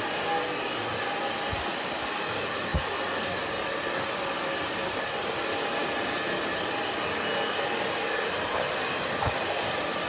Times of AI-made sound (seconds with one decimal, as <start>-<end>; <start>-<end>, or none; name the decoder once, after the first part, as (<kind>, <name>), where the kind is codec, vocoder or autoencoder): none